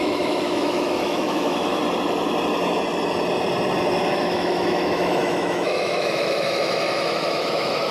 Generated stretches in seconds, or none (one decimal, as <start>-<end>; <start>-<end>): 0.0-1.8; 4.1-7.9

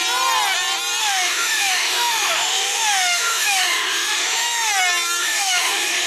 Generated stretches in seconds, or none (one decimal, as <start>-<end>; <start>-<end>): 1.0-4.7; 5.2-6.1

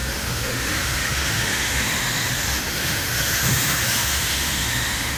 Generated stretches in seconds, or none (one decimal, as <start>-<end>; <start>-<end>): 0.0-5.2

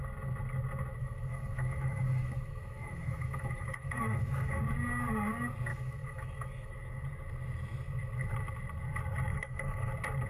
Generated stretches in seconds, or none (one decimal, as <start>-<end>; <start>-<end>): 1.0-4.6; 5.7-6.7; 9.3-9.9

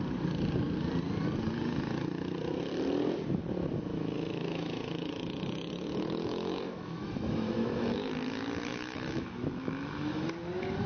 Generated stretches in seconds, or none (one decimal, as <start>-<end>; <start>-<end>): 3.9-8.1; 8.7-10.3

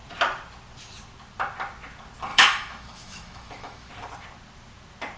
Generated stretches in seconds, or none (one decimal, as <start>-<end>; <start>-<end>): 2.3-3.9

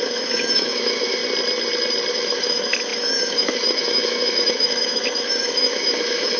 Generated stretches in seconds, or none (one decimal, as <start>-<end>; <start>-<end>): 0.0-1.2; 2.1-6.4

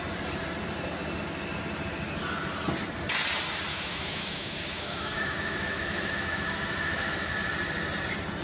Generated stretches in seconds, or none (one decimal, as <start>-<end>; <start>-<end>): 3.7-7.3